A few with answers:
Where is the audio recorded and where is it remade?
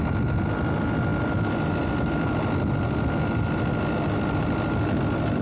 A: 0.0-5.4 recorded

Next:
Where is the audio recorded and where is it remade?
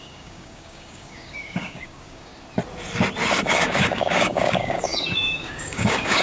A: 0.0-2.3 remade; 2.3-3.4 recorded; 3.4-6.2 remade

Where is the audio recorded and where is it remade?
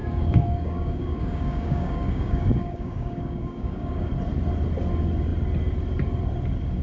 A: 0.0-4.1 remade; 4.1-6.8 recorded